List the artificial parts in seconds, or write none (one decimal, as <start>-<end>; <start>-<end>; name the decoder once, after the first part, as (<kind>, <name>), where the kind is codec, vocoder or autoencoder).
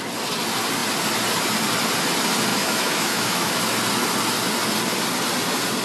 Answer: 2.5-3.6 (autoencoder, DAC-VAE)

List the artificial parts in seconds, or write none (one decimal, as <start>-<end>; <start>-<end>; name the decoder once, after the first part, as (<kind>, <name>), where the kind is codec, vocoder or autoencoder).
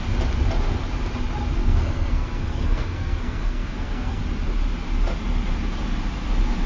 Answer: 1.6-4.2 (codec, SNAC)